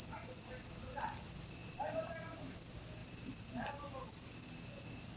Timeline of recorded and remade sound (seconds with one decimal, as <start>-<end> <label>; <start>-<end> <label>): 0.0-5.2 recorded